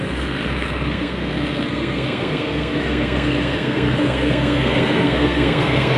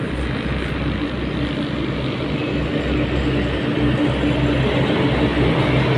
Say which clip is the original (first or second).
second